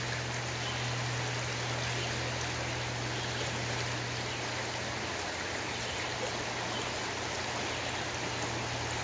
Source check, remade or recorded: recorded